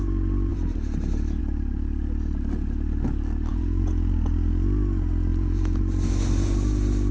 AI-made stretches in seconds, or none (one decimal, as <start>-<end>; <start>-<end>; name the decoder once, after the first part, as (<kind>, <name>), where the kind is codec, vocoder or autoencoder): 3.5-4.1 (vocoder, Vocos); 5.3-5.8